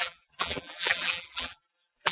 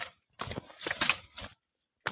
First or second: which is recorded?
second